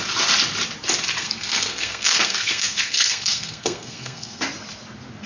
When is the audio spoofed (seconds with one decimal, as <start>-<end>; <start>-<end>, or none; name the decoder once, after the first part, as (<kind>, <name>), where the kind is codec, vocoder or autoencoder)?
1.2-4.4 (codec, SNAC)

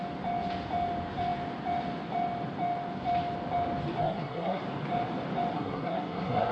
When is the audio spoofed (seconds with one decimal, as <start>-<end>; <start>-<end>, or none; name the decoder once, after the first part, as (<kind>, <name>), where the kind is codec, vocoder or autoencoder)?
4.0-4.6 (codec, SNAC); 5.5-6.5